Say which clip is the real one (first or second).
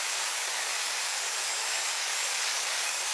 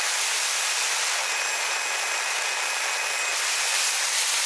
second